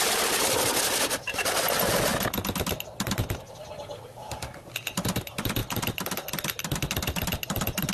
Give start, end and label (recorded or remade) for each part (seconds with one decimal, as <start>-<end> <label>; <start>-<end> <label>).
0.0-7.9 recorded